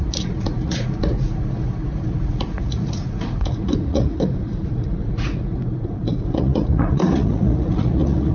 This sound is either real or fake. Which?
fake